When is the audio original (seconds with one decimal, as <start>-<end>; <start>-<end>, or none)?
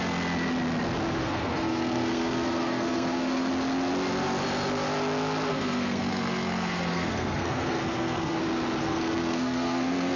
0.0-1.2; 3.5-5.5; 8.4-8.8